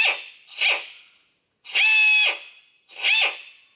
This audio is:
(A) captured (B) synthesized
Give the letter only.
A